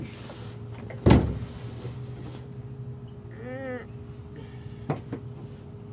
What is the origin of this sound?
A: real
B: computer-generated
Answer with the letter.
A